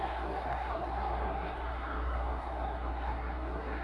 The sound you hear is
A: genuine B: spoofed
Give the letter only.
B